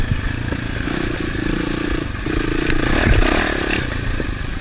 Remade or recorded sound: recorded